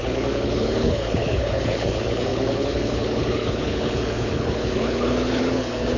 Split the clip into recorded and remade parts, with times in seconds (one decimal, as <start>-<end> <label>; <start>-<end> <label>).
0.0-6.0 remade